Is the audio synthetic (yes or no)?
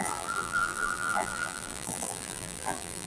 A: yes